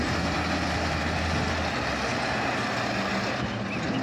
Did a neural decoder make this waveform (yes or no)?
no